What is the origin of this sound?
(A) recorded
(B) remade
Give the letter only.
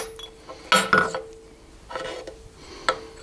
A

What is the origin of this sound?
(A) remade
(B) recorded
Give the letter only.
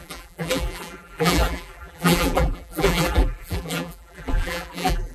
A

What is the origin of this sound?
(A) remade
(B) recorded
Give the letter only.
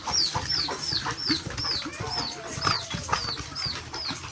B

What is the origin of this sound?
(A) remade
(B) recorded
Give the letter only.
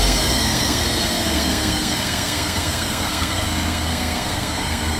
A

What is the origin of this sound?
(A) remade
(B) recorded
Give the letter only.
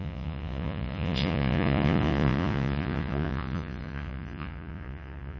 A